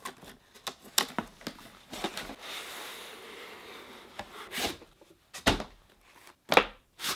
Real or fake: real